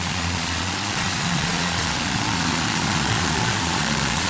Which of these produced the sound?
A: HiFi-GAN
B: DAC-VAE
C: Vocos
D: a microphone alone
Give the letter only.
C